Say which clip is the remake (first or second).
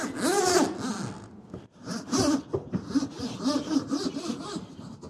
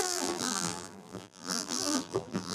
second